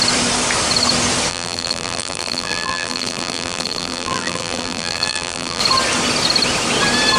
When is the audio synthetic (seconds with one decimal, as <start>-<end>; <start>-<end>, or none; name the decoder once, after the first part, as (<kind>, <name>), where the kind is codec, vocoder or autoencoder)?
1.3-5.6 (vocoder, BigVGAN v2)